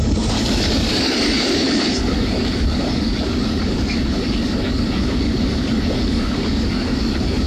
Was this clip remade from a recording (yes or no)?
yes